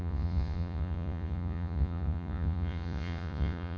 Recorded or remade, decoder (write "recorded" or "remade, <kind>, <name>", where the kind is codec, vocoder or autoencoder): remade, vocoder, Vocos